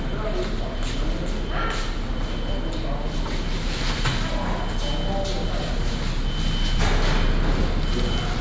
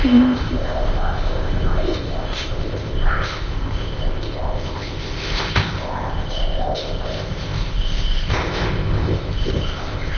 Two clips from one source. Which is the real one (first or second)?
first